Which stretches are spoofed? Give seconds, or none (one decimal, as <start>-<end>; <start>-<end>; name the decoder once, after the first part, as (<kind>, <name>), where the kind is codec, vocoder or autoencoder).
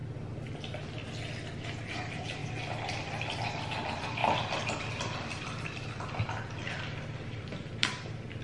none